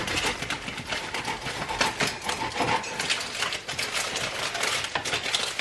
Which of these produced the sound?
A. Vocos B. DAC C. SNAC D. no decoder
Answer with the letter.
D